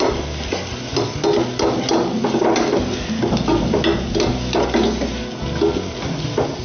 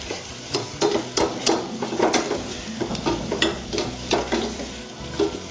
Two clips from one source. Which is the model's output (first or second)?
second